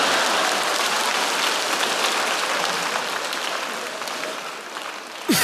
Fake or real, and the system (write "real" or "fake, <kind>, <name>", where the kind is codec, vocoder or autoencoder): real